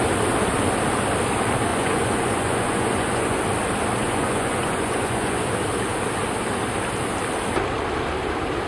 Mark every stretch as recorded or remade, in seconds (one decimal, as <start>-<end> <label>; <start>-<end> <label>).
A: 0.0-1.7 recorded; 1.7-3.4 remade; 3.4-4.0 recorded; 4.0-5.5 remade; 5.5-8.7 recorded